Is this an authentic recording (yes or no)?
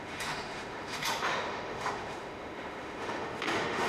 no